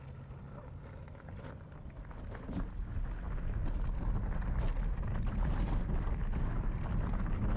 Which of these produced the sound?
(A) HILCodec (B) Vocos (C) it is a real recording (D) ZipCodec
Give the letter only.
C